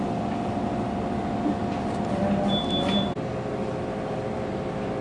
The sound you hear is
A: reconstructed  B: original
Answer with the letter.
B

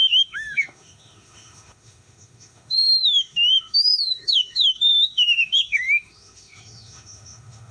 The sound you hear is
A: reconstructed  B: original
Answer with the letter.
A